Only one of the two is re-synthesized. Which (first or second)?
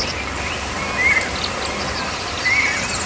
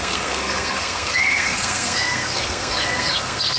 second